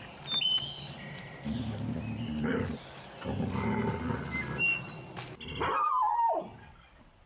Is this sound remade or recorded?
recorded